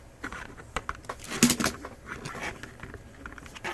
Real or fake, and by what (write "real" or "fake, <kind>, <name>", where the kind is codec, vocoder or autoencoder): real